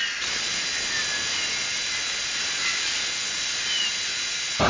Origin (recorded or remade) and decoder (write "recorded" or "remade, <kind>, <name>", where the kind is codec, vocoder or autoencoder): recorded